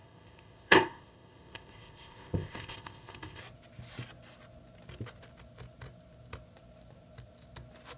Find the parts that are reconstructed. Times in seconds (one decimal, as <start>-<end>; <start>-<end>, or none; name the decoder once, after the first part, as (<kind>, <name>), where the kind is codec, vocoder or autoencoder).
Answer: 0.0-3.4 (codec, ZipCodec)